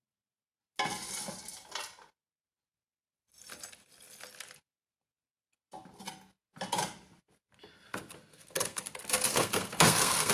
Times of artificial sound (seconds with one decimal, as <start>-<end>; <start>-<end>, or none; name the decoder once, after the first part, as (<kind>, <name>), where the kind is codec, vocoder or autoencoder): 8.3-8.9 (codec, SNAC); 9.3-10.3